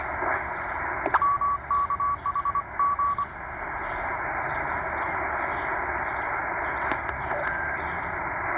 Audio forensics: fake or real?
real